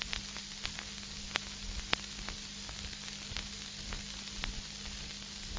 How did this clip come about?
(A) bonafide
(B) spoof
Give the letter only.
A